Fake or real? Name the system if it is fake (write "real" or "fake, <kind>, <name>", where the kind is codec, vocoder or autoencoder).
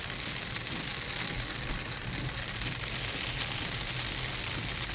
real